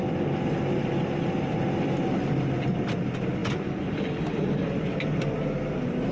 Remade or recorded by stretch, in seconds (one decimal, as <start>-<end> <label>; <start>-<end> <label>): 0.0-6.1 recorded

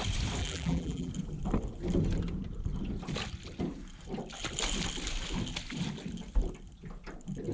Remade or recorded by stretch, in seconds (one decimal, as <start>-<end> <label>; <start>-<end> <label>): 0.0-0.4 recorded; 0.4-1.1 remade; 1.1-7.5 recorded

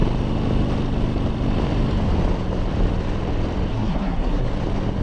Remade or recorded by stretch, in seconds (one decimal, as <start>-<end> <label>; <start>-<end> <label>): 0.0-3.7 recorded; 3.7-4.5 remade; 4.5-5.0 recorded

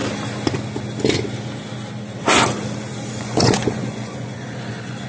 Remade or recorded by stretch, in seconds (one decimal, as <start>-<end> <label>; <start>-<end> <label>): 0.0-3.1 recorded; 3.1-5.1 remade

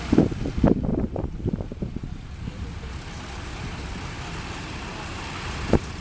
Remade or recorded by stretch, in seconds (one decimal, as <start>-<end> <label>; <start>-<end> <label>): 0.0-0.9 recorded; 0.9-2.7 remade; 2.7-6.0 recorded

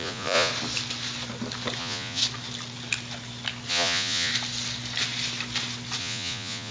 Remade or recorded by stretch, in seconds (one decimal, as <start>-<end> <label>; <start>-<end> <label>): 0.0-0.5 remade; 0.5-1.8 recorded; 1.8-2.2 remade; 2.2-3.7 recorded; 3.7-4.3 remade; 4.3-6.0 recorded; 6.0-6.7 remade

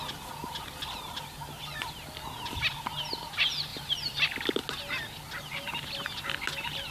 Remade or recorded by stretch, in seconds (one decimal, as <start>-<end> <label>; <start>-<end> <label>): 0.0-3.7 recorded; 3.7-4.6 remade; 4.6-6.9 recorded

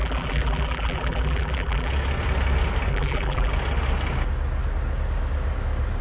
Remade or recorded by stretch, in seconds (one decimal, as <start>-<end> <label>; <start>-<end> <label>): 0.0-1.9 remade; 1.9-2.9 recorded; 2.9-3.5 remade; 3.5-6.0 recorded